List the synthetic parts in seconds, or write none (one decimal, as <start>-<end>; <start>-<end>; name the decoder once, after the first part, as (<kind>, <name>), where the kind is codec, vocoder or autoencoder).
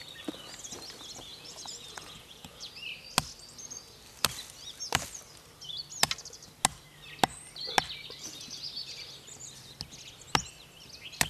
1.3-2.7 (vocoder, Vocos)